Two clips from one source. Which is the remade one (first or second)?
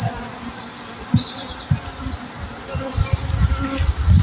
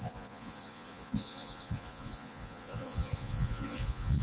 second